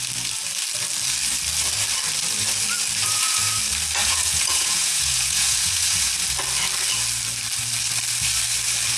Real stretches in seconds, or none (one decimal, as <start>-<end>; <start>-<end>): 0.0-3.0; 3.6-4.0; 6.1-9.0